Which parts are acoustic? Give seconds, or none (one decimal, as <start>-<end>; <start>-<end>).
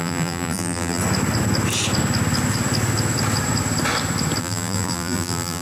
1.0-4.4